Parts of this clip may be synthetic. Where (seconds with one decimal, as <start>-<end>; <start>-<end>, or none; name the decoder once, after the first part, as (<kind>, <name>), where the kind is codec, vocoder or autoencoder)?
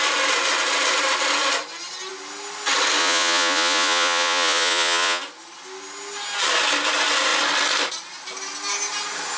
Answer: 3.0-5.2 (vocoder, Vocos)